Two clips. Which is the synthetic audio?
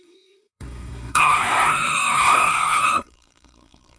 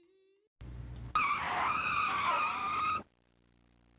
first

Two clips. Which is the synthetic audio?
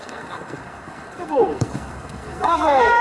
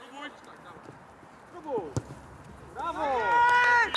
first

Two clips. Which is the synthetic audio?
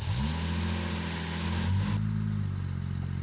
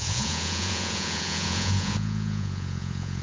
second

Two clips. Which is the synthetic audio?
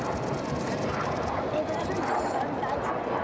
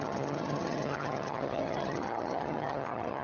second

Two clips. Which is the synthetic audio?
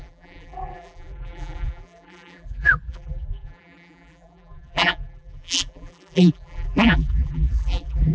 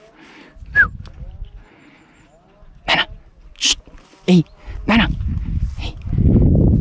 first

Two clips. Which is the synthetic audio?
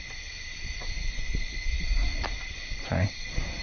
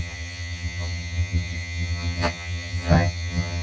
second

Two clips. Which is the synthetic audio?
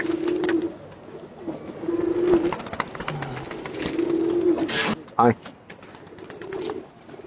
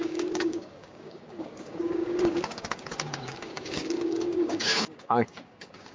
second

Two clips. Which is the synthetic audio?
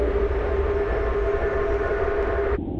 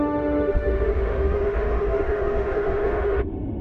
second